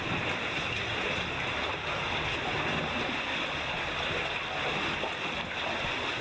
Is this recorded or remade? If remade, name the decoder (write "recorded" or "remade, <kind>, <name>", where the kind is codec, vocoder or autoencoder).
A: recorded